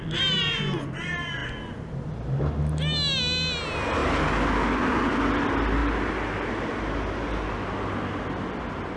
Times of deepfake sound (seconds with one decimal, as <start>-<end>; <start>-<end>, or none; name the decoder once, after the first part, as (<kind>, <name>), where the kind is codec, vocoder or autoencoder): none

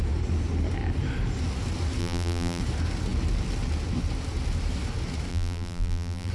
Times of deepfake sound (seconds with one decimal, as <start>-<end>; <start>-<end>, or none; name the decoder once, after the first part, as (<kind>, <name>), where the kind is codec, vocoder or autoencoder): 2.0-2.6 (vocoder, BigVGAN v2); 5.3-6.3

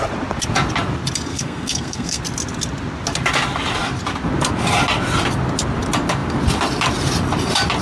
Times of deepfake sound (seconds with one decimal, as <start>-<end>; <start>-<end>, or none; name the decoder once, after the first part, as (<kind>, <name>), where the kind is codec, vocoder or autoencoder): 1.3-2.2 (codec, SNAC)

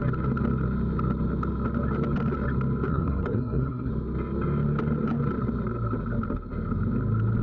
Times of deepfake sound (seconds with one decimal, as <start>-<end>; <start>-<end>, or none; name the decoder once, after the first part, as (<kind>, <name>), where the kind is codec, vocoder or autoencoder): 2.9-3.9 (codec, SNAC)

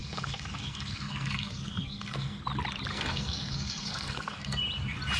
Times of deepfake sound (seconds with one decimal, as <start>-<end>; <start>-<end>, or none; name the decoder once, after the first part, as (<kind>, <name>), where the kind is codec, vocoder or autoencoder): 0.0-2.4 (codec, SNAC); 2.9-4.6

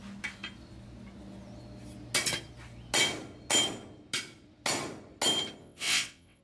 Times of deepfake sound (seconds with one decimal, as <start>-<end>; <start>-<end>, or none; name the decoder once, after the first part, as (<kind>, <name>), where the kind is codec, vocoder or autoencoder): 5.6-6.4 (vocoder, WaveNeXt)